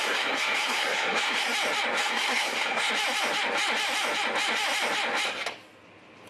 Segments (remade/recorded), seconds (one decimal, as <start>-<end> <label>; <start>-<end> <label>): 0.0-1.5 remade; 1.5-2.0 recorded; 2.0-2.9 remade; 2.9-6.3 recorded